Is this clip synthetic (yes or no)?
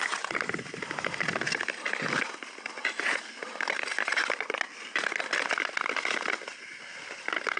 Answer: no